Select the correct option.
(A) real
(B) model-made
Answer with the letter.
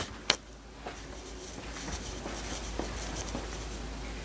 A